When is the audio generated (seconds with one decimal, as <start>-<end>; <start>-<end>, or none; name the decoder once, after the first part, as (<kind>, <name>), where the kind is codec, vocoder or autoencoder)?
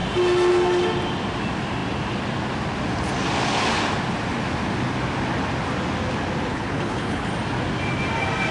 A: 6.5-7.3 (codec, HILCodec)